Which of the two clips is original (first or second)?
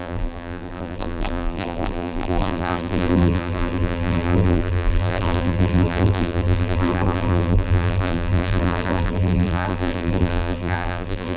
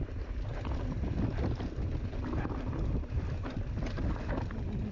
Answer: second